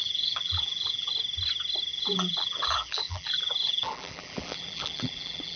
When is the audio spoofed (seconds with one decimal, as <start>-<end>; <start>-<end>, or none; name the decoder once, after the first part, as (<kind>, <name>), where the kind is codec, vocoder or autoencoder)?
0.0-1.1 (vocoder, BigVGAN v2); 1.9-5.6